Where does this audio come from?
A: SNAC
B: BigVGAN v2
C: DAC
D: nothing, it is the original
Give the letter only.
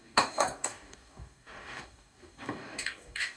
C